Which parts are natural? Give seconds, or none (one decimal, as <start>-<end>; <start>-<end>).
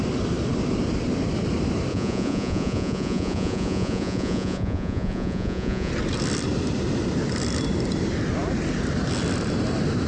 0.0-1.9; 5.9-10.1